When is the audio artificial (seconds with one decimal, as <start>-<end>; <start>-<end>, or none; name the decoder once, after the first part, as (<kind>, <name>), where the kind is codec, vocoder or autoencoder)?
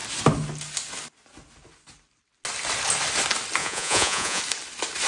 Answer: 3.6-4.4 (vocoder, Vocos)